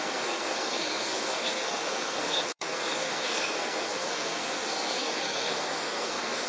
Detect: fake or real fake